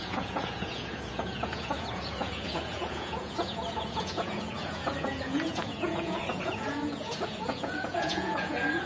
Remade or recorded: remade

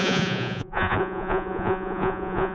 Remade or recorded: remade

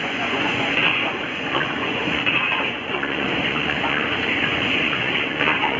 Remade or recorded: remade